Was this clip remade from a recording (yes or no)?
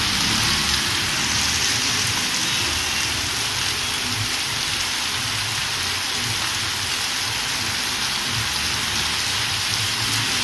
no